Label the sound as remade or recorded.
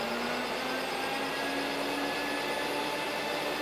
recorded